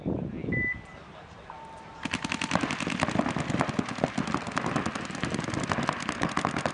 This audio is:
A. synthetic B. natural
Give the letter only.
B